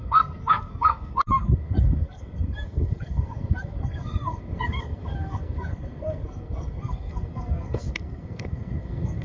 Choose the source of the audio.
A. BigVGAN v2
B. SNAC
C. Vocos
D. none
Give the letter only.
B